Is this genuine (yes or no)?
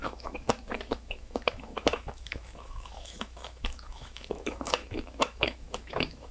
no